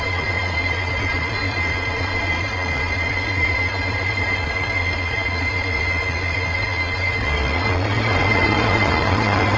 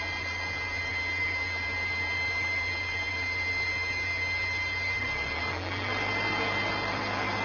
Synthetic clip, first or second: first